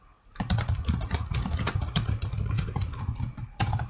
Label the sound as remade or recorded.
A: remade